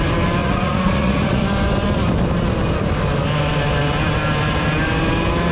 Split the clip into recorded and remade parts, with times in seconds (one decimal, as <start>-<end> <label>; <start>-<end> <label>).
0.0-0.4 recorded; 0.4-1.4 remade; 1.4-5.5 recorded